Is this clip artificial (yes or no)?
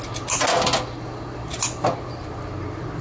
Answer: no